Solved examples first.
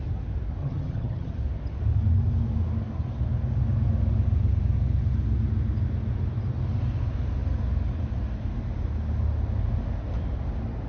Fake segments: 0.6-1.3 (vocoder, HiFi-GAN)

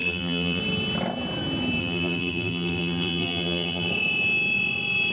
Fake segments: 0.0-0.6 (vocoder, BigVGAN v2); 1.8-3.9